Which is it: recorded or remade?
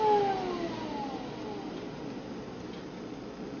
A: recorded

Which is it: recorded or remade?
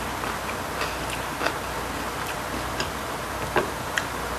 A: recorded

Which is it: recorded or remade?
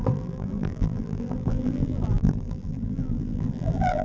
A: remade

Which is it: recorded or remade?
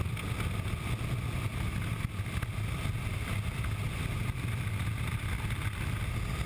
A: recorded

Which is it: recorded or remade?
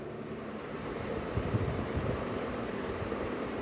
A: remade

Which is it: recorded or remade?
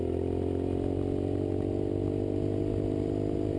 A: recorded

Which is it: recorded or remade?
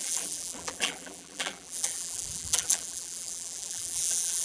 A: remade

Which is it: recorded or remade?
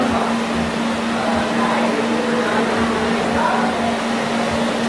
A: recorded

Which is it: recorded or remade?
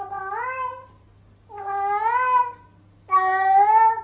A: recorded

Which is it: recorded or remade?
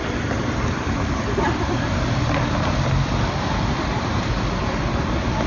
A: remade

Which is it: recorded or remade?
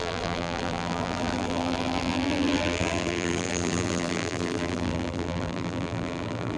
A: remade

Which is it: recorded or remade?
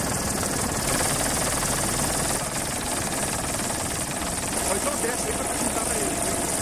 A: remade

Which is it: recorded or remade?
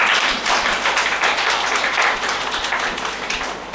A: remade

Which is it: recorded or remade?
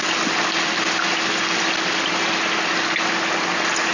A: recorded